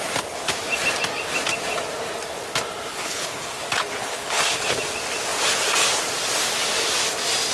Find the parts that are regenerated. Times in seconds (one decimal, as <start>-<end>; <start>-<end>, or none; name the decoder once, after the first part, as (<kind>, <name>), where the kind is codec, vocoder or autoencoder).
2.9-3.6 (codec, HILCodec); 4.0-4.8